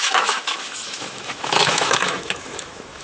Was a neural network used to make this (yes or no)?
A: yes